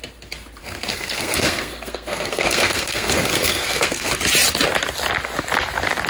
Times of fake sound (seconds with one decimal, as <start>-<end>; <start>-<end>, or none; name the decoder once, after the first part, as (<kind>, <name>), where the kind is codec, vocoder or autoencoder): 0.6-4.1 (codec, SNAC)